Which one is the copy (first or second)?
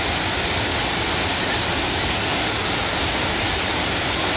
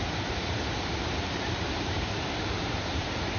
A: second